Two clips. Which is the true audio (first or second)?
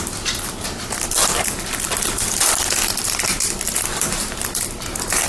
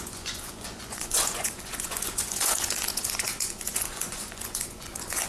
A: first